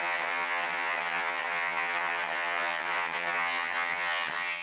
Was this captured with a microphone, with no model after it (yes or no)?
no